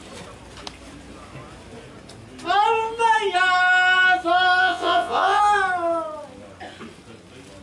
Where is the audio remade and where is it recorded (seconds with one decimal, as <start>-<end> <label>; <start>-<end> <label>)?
0.0-4.6 recorded; 4.6-5.4 remade; 5.4-7.6 recorded